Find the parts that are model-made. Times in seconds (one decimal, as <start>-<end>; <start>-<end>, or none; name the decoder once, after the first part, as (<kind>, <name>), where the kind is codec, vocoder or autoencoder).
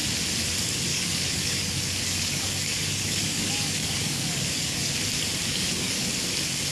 0.9-4.9 (codec, DAC); 5.5-6.1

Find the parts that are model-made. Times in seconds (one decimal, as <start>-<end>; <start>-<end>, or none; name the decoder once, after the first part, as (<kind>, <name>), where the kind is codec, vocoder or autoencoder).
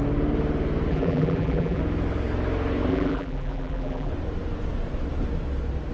0.9-1.8 (vocoder, BigVGAN v2); 2.9-4.1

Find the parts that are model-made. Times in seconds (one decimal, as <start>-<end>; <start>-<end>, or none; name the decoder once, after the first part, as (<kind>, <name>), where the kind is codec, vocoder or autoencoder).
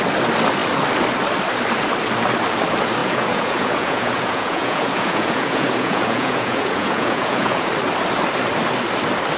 3.0-7.7 (vocoder, Vocos)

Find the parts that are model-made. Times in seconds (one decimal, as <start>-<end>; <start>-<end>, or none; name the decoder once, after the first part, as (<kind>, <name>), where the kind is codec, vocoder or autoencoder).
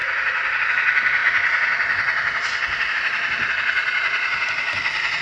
none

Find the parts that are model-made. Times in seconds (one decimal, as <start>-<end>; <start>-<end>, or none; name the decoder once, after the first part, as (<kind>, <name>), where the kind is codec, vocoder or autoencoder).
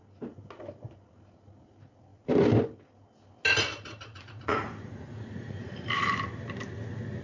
3.7-5.7 (vocoder, Vocos)